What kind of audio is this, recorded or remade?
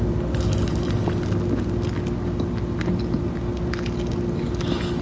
recorded